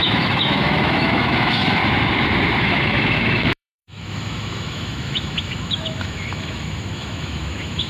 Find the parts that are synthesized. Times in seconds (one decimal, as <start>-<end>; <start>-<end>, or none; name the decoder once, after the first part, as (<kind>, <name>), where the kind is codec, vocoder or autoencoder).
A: 0.0-1.8 (autoencoder, DAC-VAE); 2.6-7.9